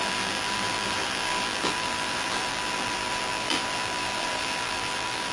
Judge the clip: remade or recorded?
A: remade